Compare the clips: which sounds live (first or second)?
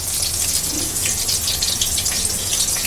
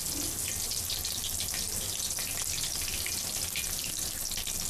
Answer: second